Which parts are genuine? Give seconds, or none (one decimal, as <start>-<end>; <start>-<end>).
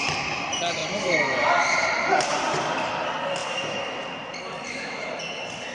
0.0-0.8; 2.6-5.7